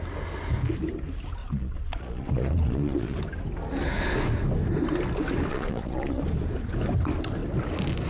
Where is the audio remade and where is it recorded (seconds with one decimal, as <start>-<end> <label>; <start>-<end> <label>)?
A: 0.0-1.4 recorded; 1.4-3.2 remade; 3.2-5.5 recorded; 5.5-6.2 remade; 6.2-8.1 recorded